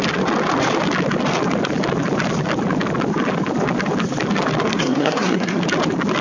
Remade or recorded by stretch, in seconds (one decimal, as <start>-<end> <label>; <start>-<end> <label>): 0.0-4.7 recorded; 4.7-5.6 remade; 5.6-6.2 recorded